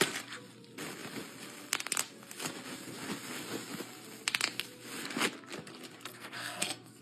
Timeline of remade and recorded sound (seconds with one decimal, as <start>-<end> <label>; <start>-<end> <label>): 0.0-6.1 recorded; 6.1-7.0 remade

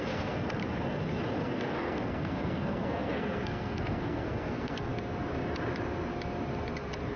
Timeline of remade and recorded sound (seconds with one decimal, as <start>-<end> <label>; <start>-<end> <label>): 0.0-0.6 remade; 0.6-1.4 recorded; 1.4-4.9 remade; 4.9-7.2 recorded

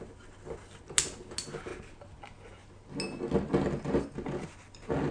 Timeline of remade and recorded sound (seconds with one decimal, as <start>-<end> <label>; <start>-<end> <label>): 0.0-5.1 recorded

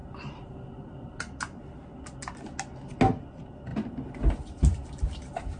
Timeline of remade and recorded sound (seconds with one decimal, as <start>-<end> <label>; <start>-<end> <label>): 0.0-1.2 remade; 1.2-5.6 recorded